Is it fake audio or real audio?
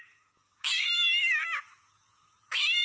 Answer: fake